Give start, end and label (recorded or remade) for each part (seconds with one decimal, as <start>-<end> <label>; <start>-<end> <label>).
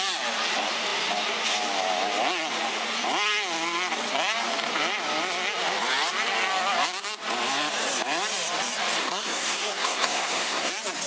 0.0-9.0 recorded; 9.0-10.7 remade; 10.7-11.1 recorded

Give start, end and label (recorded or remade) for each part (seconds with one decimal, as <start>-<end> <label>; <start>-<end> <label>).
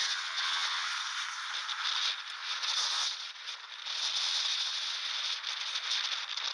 0.0-0.9 remade; 0.9-2.4 recorded; 2.4-3.7 remade; 3.7-4.5 recorded; 4.5-5.1 remade; 5.1-6.5 recorded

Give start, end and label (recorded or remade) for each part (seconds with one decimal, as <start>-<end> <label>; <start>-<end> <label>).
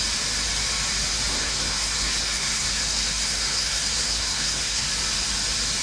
0.0-1.4 recorded; 1.4-4.9 remade; 4.9-5.8 recorded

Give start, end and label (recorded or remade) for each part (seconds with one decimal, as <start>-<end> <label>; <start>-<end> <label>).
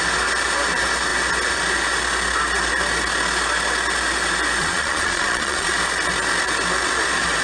0.0-4.6 recorded; 4.6-5.7 remade; 5.7-7.4 recorded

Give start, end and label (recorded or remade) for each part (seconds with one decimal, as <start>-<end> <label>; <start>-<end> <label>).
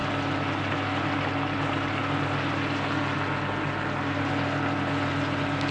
0.0-0.7 recorded; 0.7-2.0 remade; 2.0-5.1 recorded; 5.1-5.7 remade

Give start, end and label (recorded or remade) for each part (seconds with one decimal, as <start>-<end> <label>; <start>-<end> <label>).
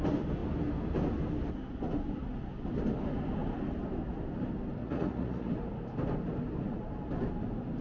0.0-4.8 recorded; 4.8-5.5 remade; 5.5-7.8 recorded